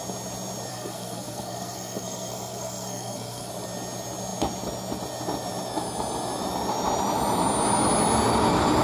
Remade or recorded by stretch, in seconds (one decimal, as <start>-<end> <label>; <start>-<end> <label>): 0.0-0.7 recorded; 0.7-3.5 remade; 3.5-8.8 recorded